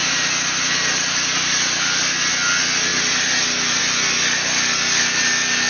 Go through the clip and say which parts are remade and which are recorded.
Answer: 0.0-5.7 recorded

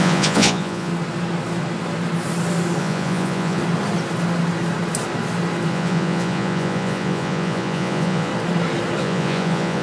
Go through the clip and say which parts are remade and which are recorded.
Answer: 0.0-0.9 remade; 0.9-2.8 recorded; 2.8-3.6 remade; 3.6-5.7 recorded; 5.7-8.3 remade; 8.3-9.0 recorded; 9.0-9.8 remade

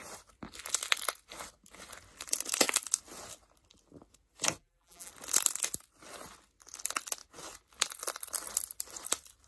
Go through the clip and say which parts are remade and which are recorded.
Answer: 0.0-4.6 recorded; 4.6-5.1 remade; 5.1-9.5 recorded

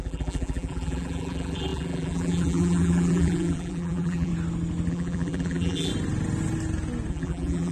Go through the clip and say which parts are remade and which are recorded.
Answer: 0.0-4.3 remade; 4.3-4.9 recorded; 4.9-5.9 remade; 5.9-7.1 recorded; 7.1-7.7 remade